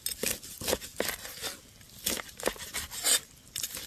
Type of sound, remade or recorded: recorded